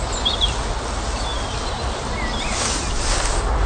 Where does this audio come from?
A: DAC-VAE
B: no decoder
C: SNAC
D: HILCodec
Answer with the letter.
B